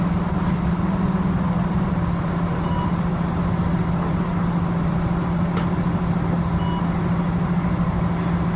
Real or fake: real